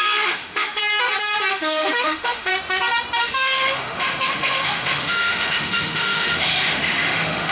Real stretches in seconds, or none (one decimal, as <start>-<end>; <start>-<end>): 0.8-1.5; 2.5-3.2